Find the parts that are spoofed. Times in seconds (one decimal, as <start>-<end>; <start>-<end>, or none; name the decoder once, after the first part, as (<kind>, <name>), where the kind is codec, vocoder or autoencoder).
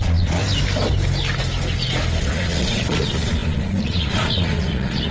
0.0-0.4 (vocoder, Vocos); 2.2-5.1